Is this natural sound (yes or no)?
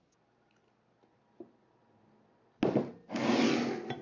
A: yes